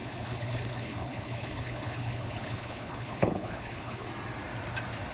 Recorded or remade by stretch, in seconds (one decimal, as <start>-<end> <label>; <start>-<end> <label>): 0.0-4.1 remade; 4.1-5.1 recorded